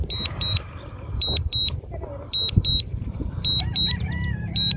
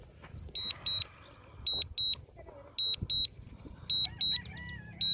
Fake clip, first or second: first